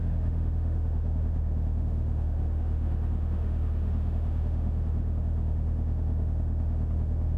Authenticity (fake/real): fake